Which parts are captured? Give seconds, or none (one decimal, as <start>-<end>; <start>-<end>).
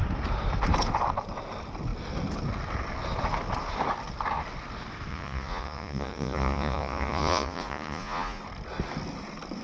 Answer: 0.0-5.1; 8.4-9.6